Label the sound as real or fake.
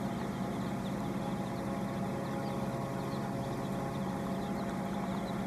real